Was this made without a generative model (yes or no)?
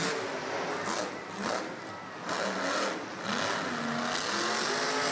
yes